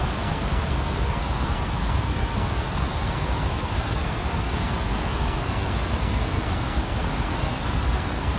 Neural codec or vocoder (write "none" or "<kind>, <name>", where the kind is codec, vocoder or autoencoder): codec, SNAC